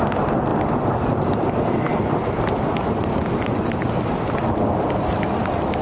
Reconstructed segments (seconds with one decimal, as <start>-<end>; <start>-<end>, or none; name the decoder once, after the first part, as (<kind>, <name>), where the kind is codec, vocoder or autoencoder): none